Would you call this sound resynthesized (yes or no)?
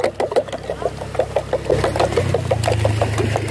no